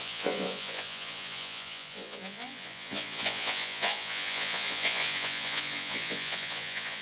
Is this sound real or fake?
fake